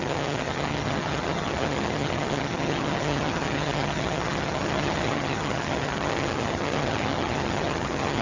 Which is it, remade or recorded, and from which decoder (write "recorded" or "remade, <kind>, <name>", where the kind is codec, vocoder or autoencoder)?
remade, vocoder, HiFi-GAN